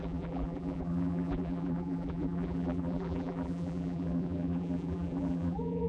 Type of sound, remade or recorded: remade